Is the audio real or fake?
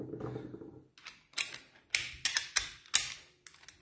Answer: real